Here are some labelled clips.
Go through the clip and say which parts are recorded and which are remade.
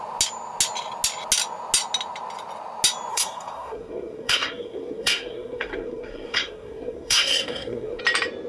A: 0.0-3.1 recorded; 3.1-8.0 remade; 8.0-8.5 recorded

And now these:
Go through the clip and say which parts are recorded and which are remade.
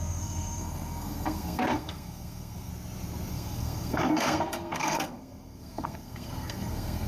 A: 0.0-2.7 remade; 2.7-3.3 recorded; 3.3-7.1 remade